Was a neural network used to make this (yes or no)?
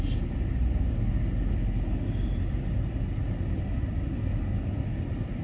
no